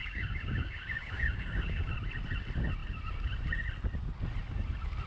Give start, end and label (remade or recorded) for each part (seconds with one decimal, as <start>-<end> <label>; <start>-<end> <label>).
0.0-1.9 remade; 1.9-5.1 recorded